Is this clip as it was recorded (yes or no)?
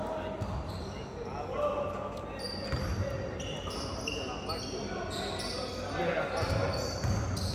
yes